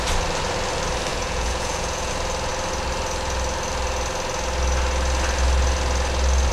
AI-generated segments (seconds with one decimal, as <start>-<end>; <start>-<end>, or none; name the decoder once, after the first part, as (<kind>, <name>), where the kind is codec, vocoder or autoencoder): 1.1-2.1 (vocoder, Vocos)